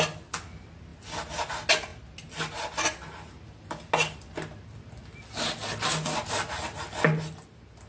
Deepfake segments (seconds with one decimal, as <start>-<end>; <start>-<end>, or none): none